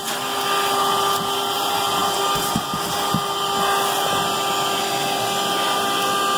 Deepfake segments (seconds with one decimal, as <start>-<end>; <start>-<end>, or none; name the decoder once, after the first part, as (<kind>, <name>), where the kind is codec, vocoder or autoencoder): none